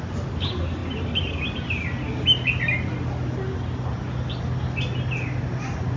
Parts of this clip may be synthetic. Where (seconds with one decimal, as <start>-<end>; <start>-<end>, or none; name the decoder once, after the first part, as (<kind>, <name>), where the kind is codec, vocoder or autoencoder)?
none